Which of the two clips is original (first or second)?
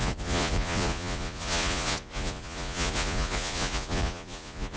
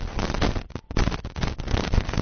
second